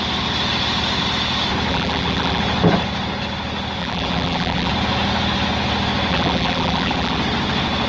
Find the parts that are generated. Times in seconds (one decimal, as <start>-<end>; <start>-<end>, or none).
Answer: 1.7-2.4; 3.8-4.7; 6.1-7.2